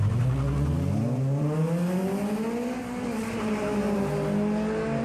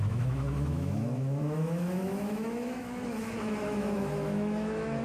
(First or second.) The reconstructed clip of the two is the second